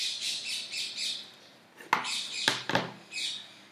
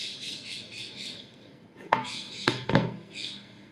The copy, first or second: second